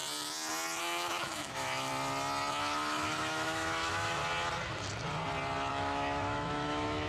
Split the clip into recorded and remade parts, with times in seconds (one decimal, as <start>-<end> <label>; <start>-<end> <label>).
0.0-0.8 recorded; 0.8-1.9 remade; 1.9-2.5 recorded; 2.5-4.2 remade; 4.2-5.7 recorded; 5.7-7.1 remade